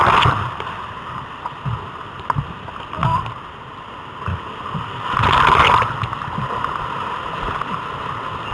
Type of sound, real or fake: real